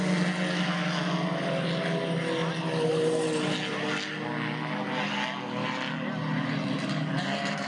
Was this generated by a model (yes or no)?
no